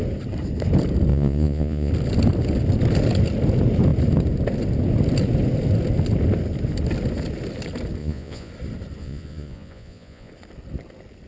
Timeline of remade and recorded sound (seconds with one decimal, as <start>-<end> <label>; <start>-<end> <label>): 0.0-1.1 recorded; 1.1-1.9 remade; 1.9-8.0 recorded; 8.0-8.5 remade; 8.5-9.0 recorded; 9.0-10.3 remade; 10.3-11.3 recorded